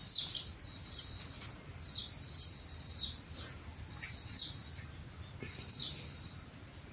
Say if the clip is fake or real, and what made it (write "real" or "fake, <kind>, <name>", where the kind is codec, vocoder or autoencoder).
real